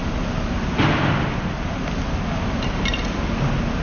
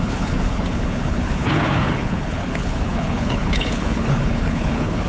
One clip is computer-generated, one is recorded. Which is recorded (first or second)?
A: first